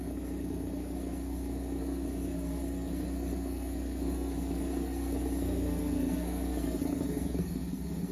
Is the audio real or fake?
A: fake